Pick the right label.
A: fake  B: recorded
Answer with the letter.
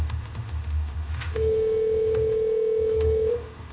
A